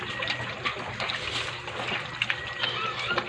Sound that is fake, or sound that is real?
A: real